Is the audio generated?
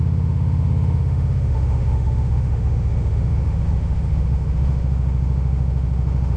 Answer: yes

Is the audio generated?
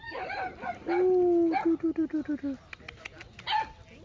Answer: no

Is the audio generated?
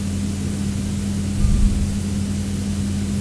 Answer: no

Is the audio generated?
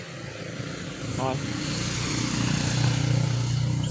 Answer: no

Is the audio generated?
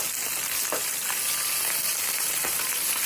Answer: no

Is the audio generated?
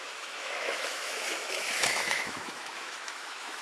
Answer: yes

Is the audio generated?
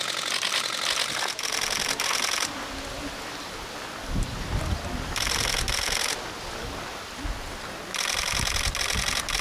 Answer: no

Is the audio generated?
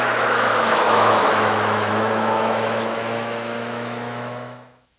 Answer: yes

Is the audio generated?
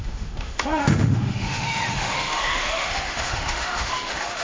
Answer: yes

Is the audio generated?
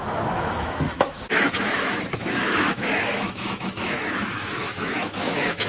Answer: yes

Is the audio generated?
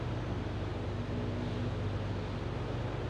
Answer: no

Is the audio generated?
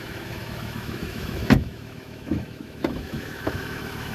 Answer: yes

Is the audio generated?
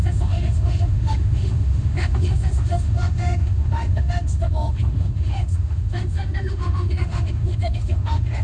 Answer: yes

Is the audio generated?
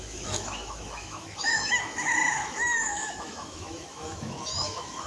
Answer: yes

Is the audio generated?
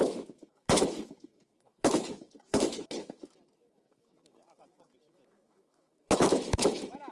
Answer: yes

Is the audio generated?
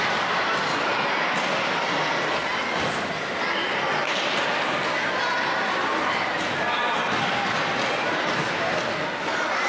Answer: no